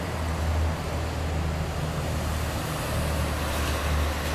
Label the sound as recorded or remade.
recorded